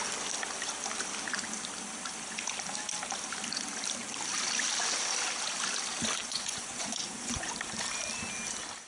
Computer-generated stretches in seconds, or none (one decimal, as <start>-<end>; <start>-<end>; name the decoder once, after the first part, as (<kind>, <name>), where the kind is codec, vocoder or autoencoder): 6.2-7.5 (vocoder, Vocos)